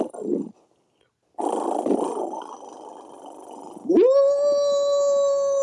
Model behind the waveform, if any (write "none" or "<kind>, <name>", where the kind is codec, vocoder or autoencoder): none